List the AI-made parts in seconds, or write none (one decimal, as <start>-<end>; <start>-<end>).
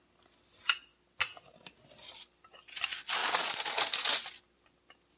none